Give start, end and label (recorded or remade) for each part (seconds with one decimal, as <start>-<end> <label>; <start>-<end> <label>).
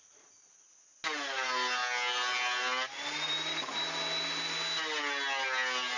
0.0-6.0 recorded